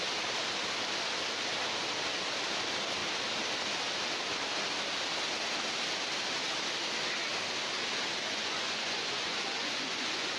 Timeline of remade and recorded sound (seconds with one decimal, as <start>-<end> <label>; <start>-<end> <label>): 0.0-8.3 recorded; 8.3-10.4 remade